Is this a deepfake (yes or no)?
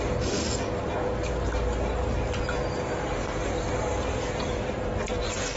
no